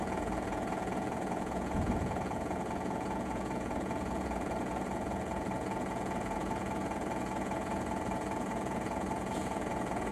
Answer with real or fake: fake